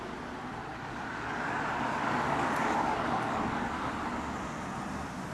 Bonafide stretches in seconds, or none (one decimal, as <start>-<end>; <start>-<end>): 0.0-0.7; 3.9-5.3